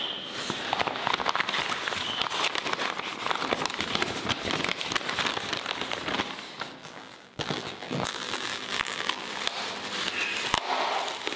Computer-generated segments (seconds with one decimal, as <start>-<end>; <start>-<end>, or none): 6.8-9.3